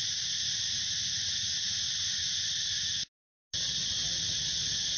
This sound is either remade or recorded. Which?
recorded